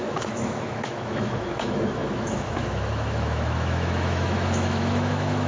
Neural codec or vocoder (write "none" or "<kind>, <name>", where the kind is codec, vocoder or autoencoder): autoencoder, DAC-VAE